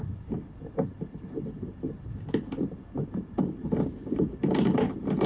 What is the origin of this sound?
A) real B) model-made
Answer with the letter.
A